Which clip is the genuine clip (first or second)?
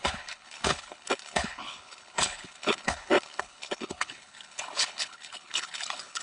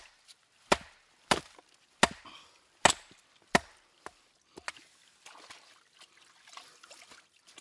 second